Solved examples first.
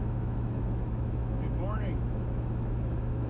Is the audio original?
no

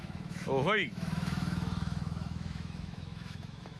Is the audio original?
no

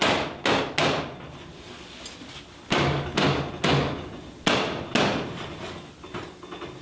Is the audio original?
yes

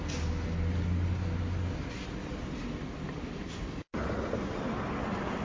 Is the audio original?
yes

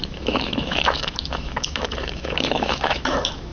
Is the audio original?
no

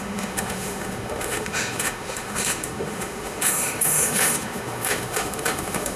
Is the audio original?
no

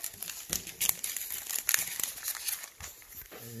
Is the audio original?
yes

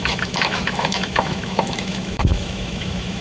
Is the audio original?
no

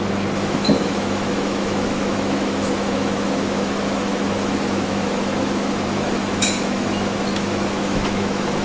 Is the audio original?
no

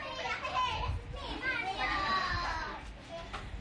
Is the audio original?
yes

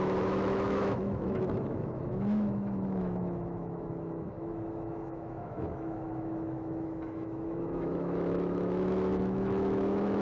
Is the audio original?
no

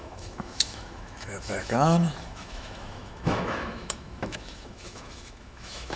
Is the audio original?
no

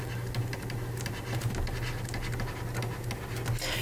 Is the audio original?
yes